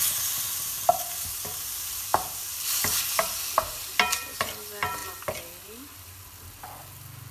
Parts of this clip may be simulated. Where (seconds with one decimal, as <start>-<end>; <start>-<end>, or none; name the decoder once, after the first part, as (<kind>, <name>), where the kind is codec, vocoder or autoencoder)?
none